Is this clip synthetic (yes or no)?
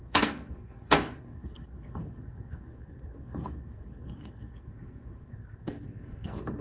yes